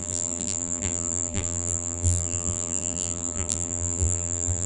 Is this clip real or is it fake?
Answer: fake